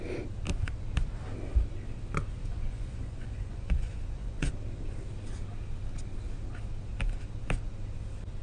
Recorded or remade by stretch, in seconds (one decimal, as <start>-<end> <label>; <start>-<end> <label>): 0.0-2.3 recorded; 2.3-4.5 remade; 4.5-8.4 recorded